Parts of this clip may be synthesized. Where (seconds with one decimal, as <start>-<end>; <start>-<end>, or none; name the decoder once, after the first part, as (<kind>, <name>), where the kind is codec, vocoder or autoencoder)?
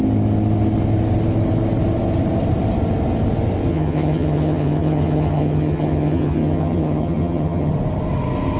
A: 3.7-7.7 (vocoder, HiFi-GAN)